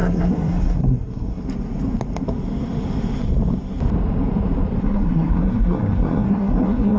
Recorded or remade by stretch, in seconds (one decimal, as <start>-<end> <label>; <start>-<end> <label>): 0.0-1.4 remade; 1.4-4.8 recorded; 4.8-7.0 remade